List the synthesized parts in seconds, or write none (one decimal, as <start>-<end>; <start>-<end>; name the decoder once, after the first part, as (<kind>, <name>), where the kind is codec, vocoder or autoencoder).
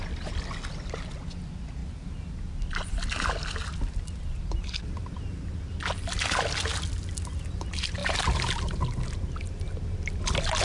1.8-2.3 (vocoder, BigVGAN v2); 8.0-8.8